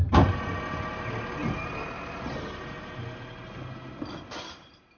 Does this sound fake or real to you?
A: real